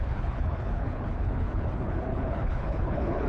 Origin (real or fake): fake